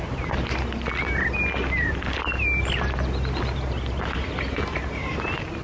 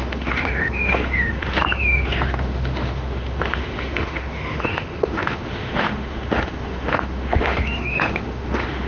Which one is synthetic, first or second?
second